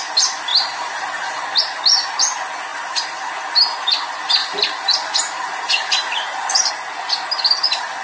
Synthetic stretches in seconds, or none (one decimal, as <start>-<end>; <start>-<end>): 0.5-1.4; 2.7-3.3; 4.4-6.7